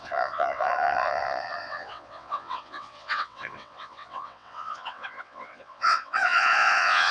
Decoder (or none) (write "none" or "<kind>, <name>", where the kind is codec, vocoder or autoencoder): vocoder, WaveNeXt